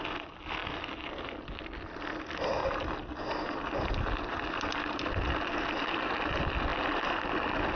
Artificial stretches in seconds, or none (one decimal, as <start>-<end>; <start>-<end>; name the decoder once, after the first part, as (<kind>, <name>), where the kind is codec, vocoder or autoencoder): none